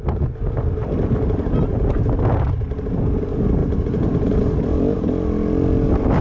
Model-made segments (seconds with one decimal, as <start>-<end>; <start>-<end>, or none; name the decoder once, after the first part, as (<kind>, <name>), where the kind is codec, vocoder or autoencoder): none